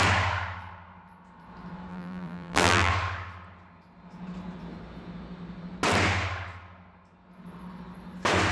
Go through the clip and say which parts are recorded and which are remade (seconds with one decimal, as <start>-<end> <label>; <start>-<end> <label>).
0.0-1.9 recorded; 1.9-2.9 remade; 2.9-8.5 recorded